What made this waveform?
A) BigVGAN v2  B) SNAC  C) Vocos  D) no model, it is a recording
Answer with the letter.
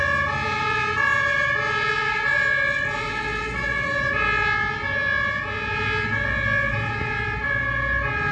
D